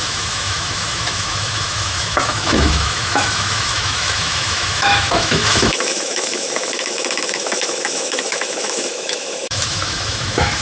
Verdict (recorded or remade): remade